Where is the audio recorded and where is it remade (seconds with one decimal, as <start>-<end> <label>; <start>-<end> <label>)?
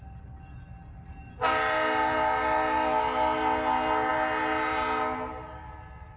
0.0-6.2 recorded